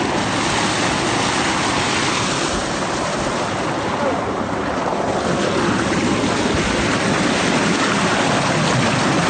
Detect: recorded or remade recorded